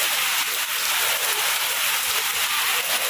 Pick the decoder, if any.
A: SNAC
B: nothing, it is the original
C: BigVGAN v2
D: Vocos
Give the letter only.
C